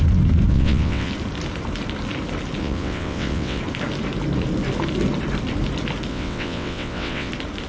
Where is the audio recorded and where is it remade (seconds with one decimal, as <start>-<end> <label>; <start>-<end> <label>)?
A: 0.0-0.5 recorded; 0.5-1.1 remade; 1.1-2.6 recorded; 2.6-3.6 remade; 3.6-6.1 recorded; 6.1-7.3 remade; 7.3-7.7 recorded